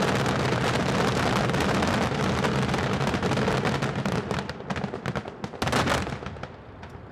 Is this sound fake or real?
real